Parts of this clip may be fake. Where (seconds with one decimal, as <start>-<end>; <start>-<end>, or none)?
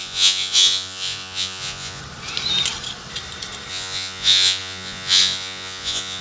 0.0-2.0; 3.7-6.2